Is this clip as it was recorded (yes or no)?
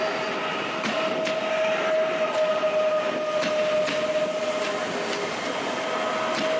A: yes